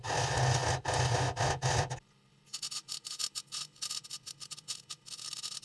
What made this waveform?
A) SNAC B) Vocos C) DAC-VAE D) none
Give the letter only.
D